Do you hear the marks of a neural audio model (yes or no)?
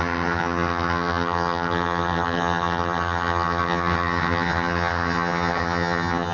yes